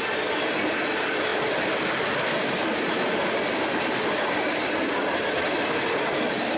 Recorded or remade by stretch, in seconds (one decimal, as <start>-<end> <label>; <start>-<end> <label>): 0.0-6.6 recorded

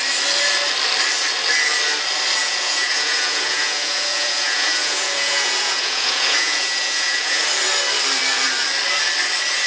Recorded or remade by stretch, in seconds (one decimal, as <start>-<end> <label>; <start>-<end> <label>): 0.0-2.4 recorded; 2.4-7.4 remade; 7.4-9.7 recorded

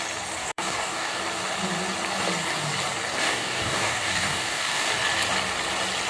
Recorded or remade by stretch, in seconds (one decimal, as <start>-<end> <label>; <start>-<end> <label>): 0.0-0.4 recorded; 0.4-1.2 remade; 1.2-3.2 recorded; 3.2-4.9 remade; 4.9-6.1 recorded